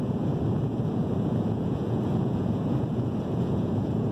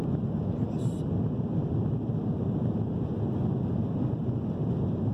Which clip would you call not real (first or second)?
first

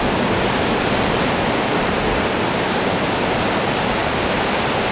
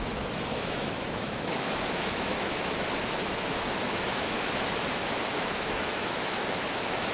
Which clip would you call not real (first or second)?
second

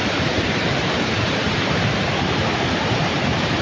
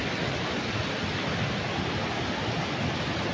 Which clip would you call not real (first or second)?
first